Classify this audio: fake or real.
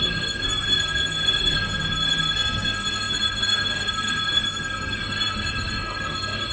fake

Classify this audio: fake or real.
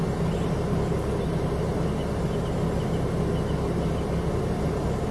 real